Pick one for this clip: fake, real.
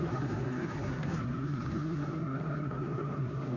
fake